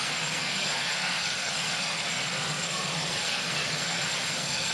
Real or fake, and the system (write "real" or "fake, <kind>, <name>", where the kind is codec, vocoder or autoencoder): fake, codec, SNAC